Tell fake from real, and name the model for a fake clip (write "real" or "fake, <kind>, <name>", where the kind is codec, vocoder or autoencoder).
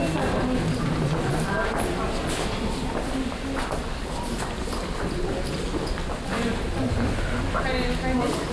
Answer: real